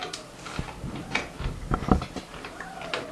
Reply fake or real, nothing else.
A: real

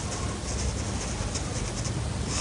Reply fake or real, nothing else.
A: real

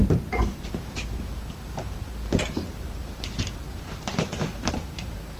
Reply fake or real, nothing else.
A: fake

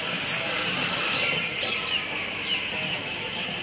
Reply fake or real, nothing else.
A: fake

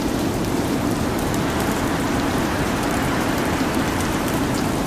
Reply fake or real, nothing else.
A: fake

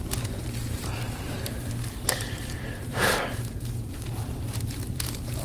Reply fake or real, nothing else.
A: fake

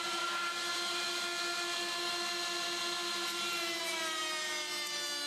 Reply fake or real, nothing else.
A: fake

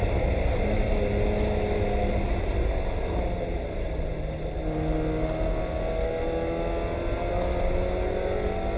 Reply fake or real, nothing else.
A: real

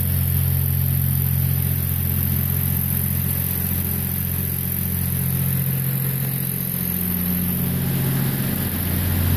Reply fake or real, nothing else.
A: real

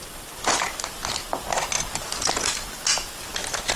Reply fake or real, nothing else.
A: real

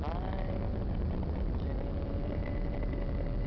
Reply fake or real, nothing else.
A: fake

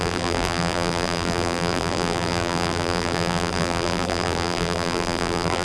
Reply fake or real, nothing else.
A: fake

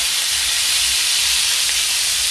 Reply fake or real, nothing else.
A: fake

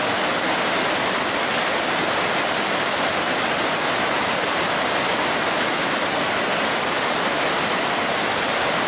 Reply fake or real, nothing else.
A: real